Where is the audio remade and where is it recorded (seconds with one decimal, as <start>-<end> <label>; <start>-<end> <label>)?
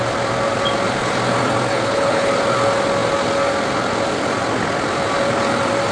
0.0-1.7 recorded; 1.7-2.3 remade; 2.3-5.9 recorded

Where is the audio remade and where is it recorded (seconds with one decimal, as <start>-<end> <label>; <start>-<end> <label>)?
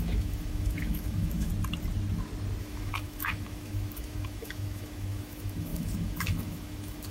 0.0-1.5 remade; 1.5-2.6 recorded; 2.6-7.1 remade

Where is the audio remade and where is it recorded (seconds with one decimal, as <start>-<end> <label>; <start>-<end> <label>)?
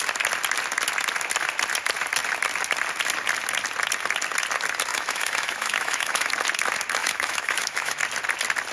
0.0-4.9 recorded; 4.9-6.3 remade; 6.3-7.0 recorded; 7.0-8.0 remade; 8.0-8.7 recorded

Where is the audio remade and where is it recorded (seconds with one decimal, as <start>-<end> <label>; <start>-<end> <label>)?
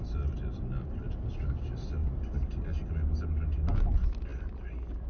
0.0-5.1 recorded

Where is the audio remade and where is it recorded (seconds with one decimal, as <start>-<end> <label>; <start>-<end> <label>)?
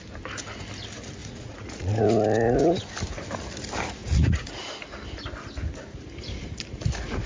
0.0-1.2 recorded; 1.2-1.9 remade; 1.9-4.0 recorded; 4.0-4.5 remade; 4.5-7.3 recorded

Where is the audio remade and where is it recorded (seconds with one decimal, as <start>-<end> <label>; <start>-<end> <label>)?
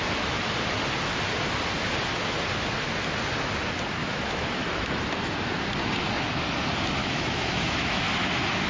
0.0-4.0 recorded; 4.0-5.0 remade; 5.0-7.0 recorded; 7.0-8.1 remade; 8.1-8.7 recorded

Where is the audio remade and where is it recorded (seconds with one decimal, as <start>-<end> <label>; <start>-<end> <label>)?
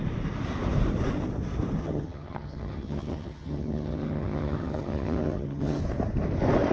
0.0-1.8 recorded; 1.8-5.8 remade; 5.8-6.7 recorded